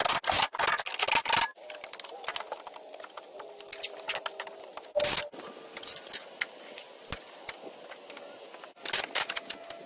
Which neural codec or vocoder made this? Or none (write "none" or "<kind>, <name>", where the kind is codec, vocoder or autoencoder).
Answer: none